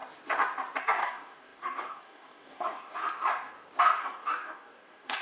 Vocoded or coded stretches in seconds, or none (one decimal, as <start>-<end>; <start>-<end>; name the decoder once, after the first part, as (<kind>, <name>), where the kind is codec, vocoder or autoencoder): 0.8-3.0 (codec, DAC); 4.0-5.2